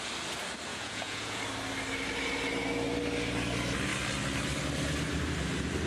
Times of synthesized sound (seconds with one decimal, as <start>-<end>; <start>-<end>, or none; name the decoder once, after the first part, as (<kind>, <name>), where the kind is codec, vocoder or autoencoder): 0.7-1.4 (vocoder, Vocos)